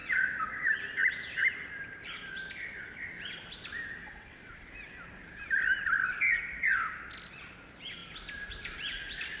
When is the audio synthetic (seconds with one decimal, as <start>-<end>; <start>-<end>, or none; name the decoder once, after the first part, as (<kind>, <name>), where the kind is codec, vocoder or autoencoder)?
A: 0.0-0.7 (vocoder, WaveNeXt); 4.0-4.7